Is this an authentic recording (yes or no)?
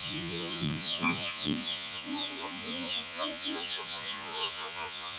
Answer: no